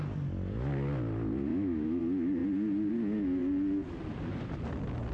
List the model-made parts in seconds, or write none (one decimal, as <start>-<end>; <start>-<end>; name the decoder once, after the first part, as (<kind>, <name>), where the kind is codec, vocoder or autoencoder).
1.5-2.0 (autoencoder, DAC-VAE)